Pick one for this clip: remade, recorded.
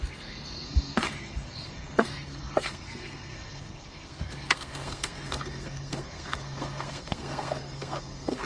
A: remade